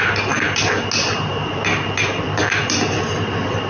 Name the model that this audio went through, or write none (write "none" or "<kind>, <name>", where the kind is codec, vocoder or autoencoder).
none